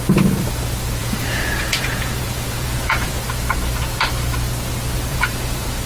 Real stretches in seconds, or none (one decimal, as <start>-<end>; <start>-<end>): 0.0-1.0; 3.1-5.1